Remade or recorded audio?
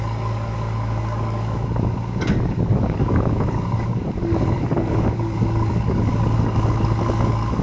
remade